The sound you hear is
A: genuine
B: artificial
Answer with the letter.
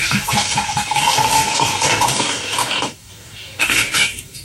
B